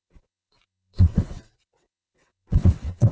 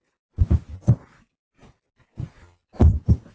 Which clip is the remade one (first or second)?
first